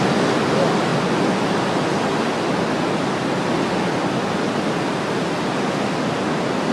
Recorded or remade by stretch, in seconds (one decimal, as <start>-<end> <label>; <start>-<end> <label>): 0.0-6.7 recorded